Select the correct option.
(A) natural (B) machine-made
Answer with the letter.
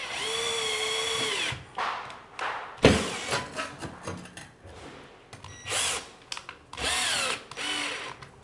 A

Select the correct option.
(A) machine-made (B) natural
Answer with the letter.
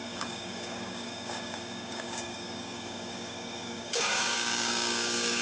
A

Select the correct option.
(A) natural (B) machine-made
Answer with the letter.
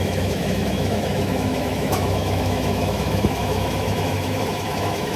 B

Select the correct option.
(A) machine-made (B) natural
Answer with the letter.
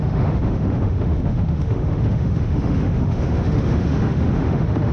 A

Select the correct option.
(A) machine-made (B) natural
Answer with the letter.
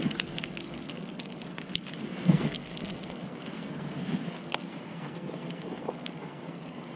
A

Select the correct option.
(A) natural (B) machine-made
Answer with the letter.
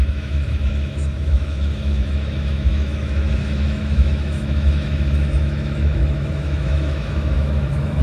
B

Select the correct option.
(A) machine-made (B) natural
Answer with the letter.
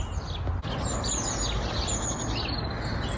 B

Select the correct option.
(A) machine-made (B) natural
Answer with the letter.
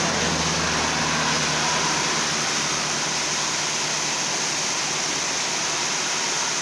B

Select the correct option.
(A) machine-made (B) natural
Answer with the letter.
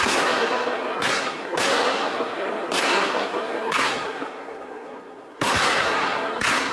A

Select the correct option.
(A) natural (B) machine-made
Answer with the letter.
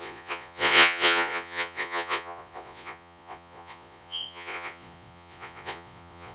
B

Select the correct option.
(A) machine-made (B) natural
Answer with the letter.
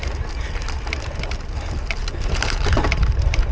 A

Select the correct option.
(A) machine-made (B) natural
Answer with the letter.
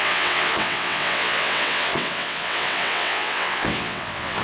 A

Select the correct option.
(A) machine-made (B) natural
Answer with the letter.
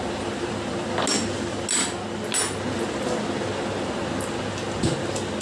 B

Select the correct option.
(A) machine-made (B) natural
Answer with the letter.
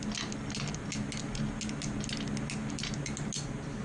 B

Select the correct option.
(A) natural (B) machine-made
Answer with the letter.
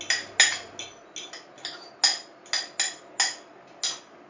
A